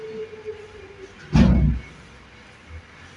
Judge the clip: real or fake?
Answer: real